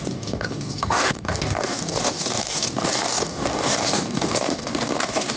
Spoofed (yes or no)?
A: yes